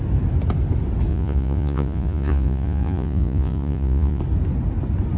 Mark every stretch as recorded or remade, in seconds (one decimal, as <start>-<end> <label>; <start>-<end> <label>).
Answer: 0.0-1.1 recorded; 1.1-4.2 remade; 4.2-5.2 recorded